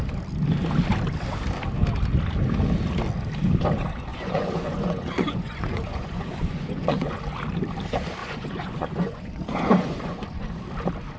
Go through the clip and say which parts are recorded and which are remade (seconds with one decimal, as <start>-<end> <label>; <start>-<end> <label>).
0.0-4.1 recorded; 4.1-7.2 remade; 7.2-8.2 recorded; 8.2-10.6 remade; 10.6-11.2 recorded